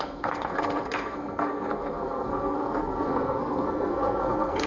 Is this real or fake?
fake